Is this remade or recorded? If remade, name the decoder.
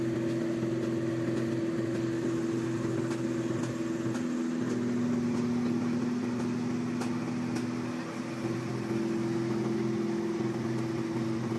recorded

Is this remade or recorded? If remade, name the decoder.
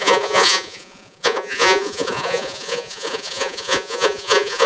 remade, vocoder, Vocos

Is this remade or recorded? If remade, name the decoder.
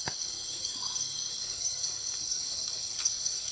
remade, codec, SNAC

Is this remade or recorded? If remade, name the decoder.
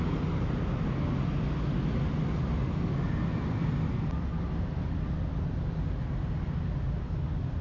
recorded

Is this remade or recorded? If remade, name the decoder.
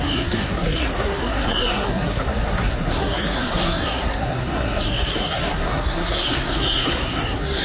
remade, codec, SNAC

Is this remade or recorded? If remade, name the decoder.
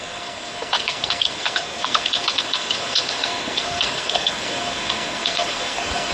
remade, codec, SNAC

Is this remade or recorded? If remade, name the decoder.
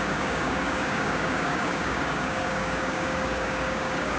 remade, codec, DAC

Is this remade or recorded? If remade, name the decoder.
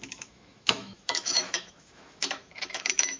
remade, autoencoder, DAC-VAE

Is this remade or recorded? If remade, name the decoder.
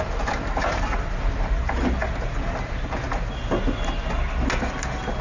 recorded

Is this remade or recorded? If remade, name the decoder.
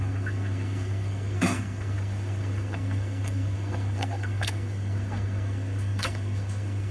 remade, codec, SNAC